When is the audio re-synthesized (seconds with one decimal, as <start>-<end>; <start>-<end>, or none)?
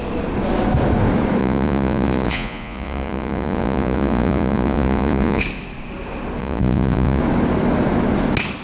1.4-5.4; 6.4-7.2